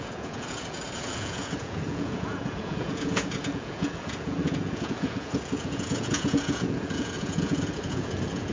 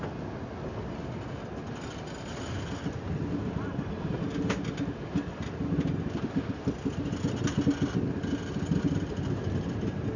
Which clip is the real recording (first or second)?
second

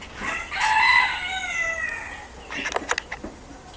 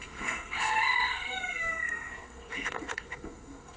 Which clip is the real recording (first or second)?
first